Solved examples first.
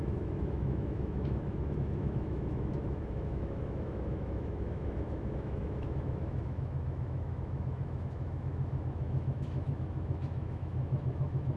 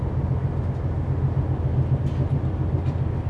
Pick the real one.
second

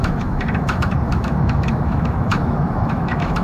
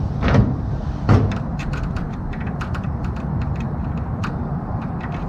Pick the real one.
second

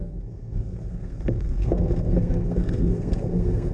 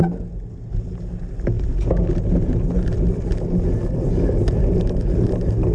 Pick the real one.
second